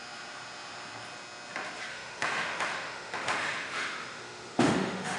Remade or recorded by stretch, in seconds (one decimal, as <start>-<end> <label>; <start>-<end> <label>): 0.0-1.9 recorded; 1.9-5.2 remade